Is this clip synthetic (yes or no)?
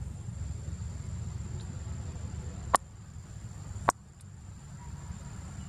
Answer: no